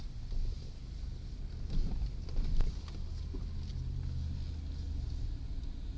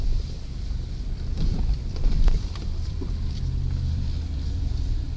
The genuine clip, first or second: first